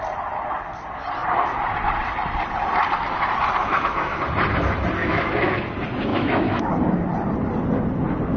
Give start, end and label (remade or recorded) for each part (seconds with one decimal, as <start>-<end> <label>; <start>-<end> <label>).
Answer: 0.0-3.6 recorded; 3.6-4.2 remade; 4.2-5.0 recorded; 5.0-5.6 remade; 5.6-6.1 recorded; 6.1-6.7 remade; 6.7-8.4 recorded